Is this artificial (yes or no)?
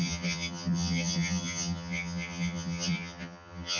yes